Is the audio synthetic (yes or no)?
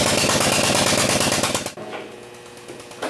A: no